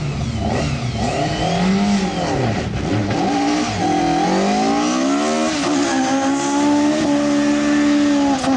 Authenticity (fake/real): real